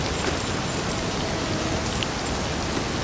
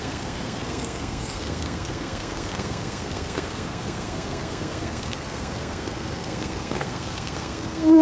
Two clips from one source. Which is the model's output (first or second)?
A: second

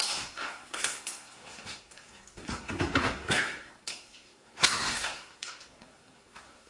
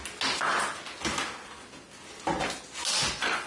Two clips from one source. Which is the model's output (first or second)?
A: first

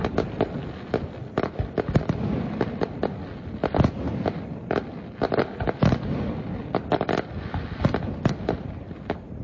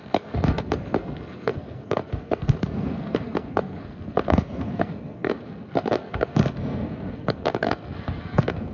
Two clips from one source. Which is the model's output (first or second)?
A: second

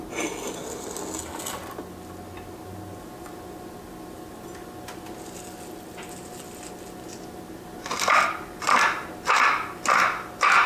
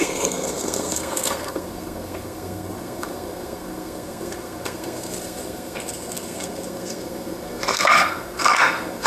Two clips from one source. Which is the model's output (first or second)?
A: second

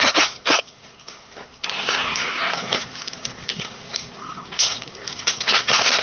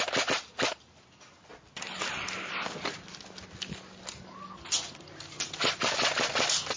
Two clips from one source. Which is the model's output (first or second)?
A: first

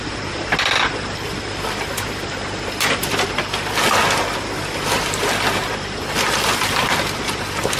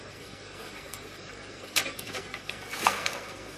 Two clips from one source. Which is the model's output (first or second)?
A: second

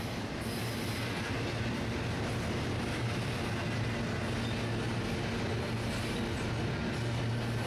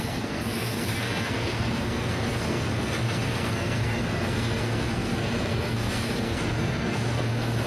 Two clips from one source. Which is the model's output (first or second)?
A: second